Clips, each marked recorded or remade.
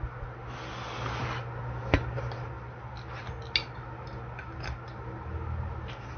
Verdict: recorded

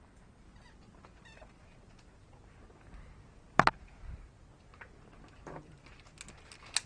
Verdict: recorded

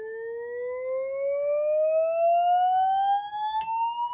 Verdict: recorded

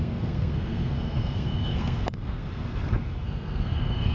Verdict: remade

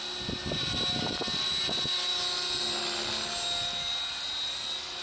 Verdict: recorded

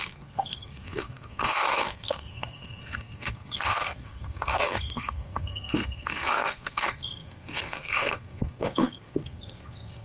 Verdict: remade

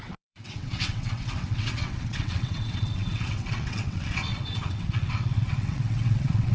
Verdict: remade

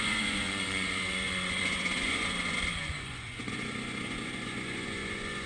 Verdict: remade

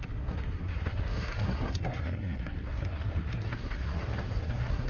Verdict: remade